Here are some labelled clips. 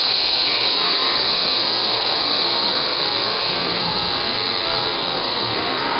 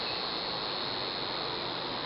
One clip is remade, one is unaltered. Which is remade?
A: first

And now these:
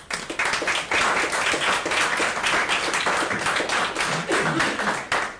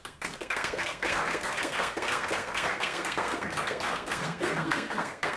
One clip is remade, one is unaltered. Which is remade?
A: second